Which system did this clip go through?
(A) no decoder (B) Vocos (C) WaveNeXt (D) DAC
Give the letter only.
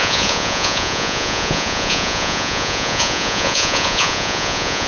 B